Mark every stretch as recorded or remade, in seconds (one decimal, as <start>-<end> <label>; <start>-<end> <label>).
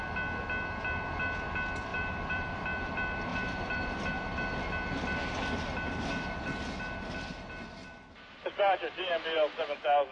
0.0-1.9 recorded; 1.9-2.9 remade; 2.9-3.3 recorded; 3.3-4.2 remade; 4.2-10.1 recorded